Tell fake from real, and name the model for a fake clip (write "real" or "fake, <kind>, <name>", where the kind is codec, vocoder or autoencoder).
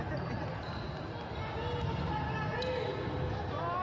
real